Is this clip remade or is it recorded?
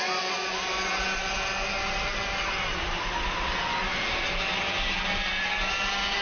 recorded